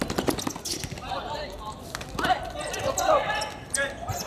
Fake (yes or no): no